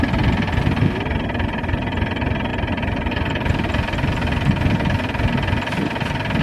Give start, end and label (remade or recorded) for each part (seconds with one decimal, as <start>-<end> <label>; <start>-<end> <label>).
0.0-6.4 recorded